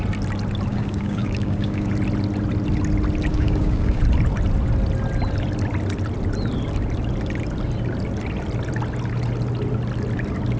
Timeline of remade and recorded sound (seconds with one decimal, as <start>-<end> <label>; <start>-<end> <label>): 0.0-0.7 recorded; 0.7-1.9 remade; 1.9-3.3 recorded; 3.3-4.0 remade; 4.0-10.6 recorded